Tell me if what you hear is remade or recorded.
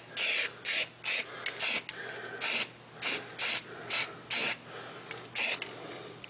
recorded